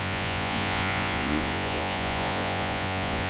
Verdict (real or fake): fake